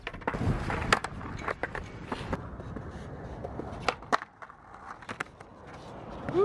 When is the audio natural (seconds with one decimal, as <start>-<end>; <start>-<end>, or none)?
0.0-6.4